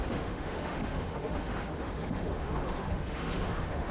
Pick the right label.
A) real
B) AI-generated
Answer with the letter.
B